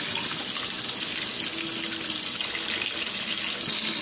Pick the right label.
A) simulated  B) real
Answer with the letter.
B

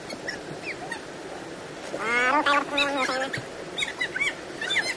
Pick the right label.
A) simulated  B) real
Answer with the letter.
B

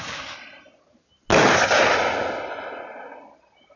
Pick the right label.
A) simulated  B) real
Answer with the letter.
B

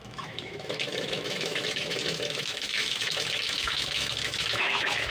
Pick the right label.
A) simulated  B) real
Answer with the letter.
A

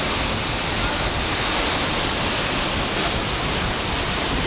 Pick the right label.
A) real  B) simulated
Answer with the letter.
A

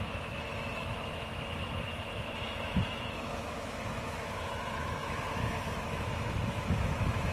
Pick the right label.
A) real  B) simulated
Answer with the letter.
B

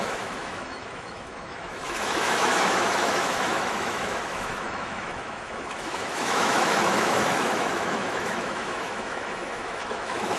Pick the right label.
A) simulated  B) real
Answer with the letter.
A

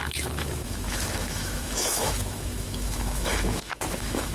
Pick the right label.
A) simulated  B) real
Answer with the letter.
A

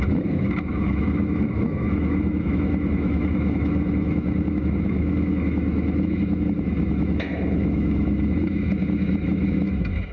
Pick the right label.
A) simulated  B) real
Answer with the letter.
A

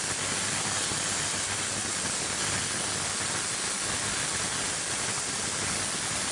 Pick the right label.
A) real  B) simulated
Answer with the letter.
A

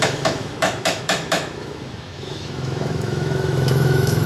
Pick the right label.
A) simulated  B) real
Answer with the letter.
A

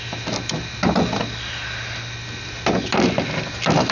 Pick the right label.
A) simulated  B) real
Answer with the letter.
B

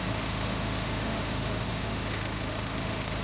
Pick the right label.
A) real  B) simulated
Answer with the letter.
B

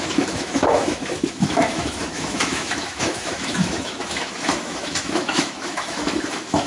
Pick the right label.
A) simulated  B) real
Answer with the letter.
A